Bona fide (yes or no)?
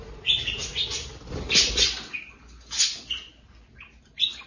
yes